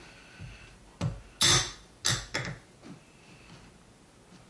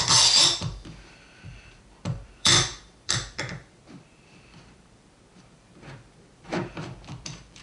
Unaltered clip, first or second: first